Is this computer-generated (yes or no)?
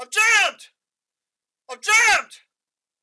no